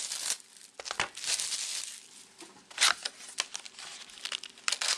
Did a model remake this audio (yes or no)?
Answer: no